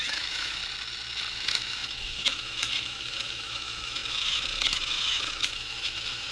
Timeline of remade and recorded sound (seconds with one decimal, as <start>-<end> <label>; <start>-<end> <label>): 0.0-0.6 remade; 0.6-1.3 recorded; 1.3-6.3 remade